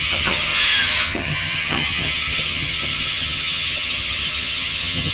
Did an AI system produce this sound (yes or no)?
yes